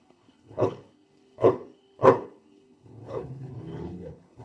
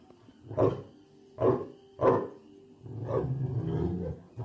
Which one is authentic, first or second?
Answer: second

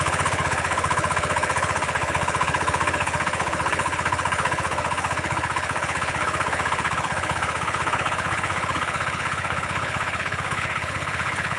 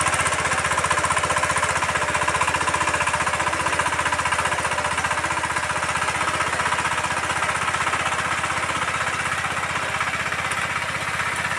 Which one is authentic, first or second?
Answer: second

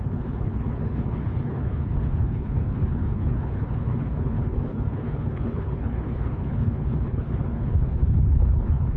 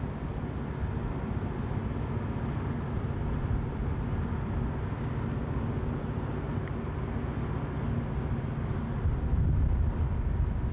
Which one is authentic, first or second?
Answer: second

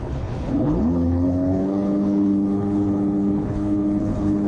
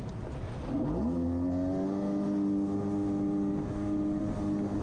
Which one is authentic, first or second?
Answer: second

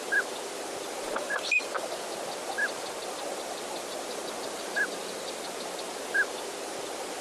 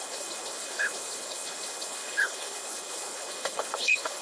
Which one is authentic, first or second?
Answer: first